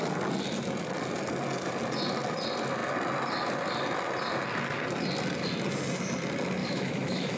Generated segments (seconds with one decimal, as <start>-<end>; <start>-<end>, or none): 6.6-7.4